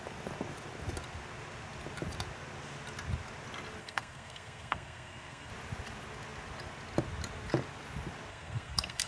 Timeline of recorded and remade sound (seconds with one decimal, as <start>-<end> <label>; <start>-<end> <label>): 0.0-3.8 recorded; 3.8-5.5 remade; 5.5-8.3 recorded; 8.3-9.1 remade